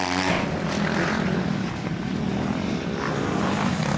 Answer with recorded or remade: recorded